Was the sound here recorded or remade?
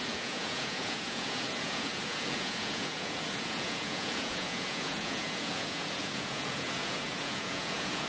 remade